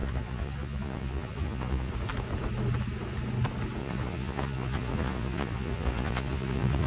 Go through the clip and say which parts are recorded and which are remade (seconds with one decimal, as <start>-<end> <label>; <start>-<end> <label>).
0.0-1.9 remade; 1.9-3.8 recorded; 3.8-6.9 remade